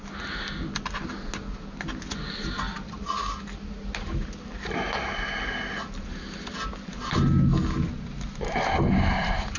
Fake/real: real